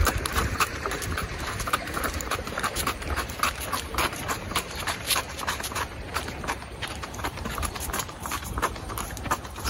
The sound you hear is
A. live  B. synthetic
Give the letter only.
B